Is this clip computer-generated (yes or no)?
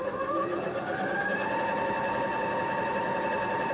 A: no